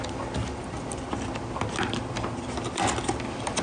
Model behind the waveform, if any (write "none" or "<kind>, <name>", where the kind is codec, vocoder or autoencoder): none